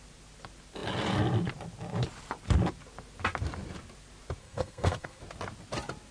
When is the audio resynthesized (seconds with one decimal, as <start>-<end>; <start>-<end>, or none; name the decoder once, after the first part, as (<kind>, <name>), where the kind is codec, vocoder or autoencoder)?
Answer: 4.4-5.2 (codec, SNAC)